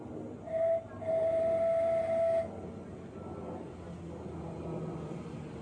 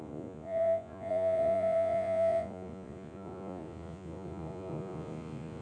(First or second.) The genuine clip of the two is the first